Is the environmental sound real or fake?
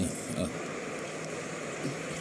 real